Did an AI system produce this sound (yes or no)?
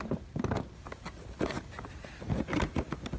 no